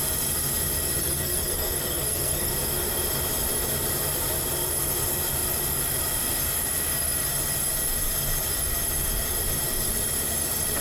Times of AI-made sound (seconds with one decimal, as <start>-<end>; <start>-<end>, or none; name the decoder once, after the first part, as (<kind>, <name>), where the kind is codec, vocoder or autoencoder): 1.0-2.5 (codec, SNAC)